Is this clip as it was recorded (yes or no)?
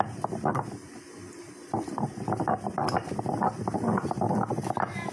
yes